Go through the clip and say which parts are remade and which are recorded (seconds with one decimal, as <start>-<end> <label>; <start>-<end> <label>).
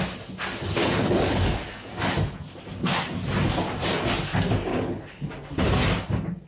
0.0-0.8 recorded; 0.8-1.4 remade; 1.4-4.7 recorded; 4.7-5.3 remade; 5.3-6.5 recorded